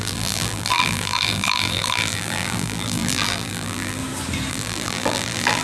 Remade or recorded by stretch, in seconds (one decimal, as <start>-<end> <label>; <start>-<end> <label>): 0.0-4.0 remade; 4.0-4.5 recorded; 4.5-5.6 remade